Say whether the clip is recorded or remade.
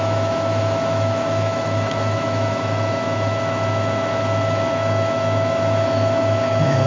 remade